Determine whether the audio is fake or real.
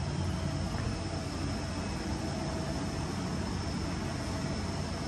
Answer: real